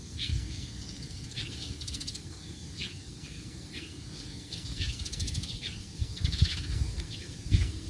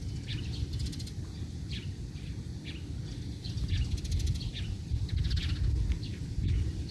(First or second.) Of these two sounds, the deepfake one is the first